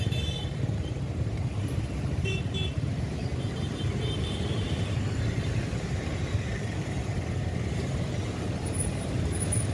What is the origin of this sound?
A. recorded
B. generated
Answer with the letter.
B